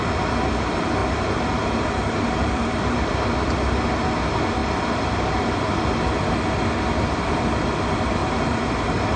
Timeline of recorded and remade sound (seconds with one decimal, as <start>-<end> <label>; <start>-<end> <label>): 0.0-1.0 recorded; 1.0-3.8 remade; 3.8-4.6 recorded; 4.6-5.5 remade; 5.5-8.2 recorded; 8.2-9.2 remade